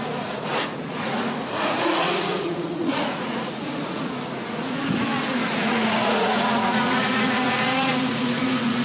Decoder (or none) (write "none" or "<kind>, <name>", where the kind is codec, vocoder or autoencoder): vocoder, Vocos